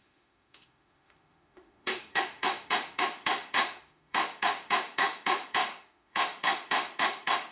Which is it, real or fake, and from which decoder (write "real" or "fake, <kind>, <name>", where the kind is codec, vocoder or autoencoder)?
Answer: fake, autoencoder, DAC-VAE